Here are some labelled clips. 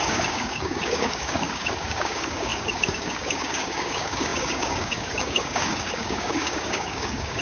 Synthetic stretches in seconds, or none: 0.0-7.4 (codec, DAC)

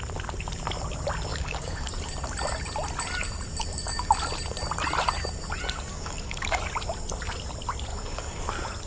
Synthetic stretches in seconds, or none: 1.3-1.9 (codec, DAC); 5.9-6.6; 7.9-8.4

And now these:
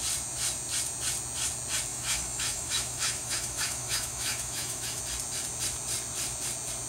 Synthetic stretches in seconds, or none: 1.9-5.0 (autoencoder, DAC-VAE)